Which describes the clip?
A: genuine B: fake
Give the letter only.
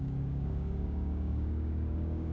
B